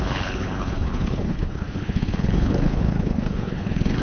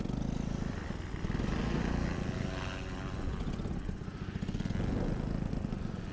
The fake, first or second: first